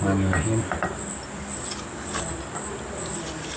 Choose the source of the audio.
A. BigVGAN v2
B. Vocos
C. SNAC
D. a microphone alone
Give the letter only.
D